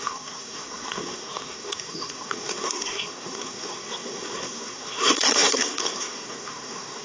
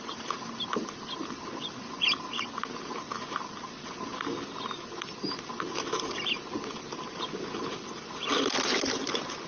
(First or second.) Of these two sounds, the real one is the second